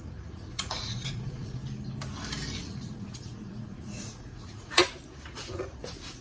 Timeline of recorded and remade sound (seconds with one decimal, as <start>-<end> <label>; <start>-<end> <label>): 0.0-1.6 remade; 1.6-2.6 recorded; 2.6-4.8 remade; 4.8-5.3 recorded; 5.3-6.2 remade

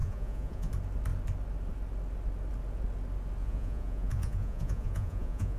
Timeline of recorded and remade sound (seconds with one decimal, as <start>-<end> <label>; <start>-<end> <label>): 0.0-0.7 remade; 0.7-3.4 recorded; 3.4-5.6 remade

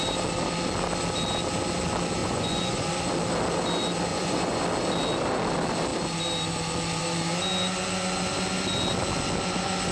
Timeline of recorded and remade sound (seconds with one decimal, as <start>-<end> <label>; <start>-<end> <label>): 0.0-2.2 recorded; 2.2-2.9 remade; 2.9-4.1 recorded; 4.1-4.6 remade; 4.6-9.9 recorded

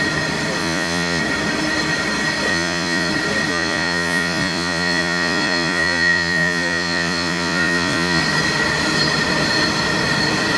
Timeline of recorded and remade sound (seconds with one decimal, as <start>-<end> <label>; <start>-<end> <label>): 0.0-0.6 recorded; 0.6-1.2 remade; 1.2-2.5 recorded; 2.5-3.1 remade; 3.1-3.5 recorded; 3.5-8.2 remade; 8.2-10.6 recorded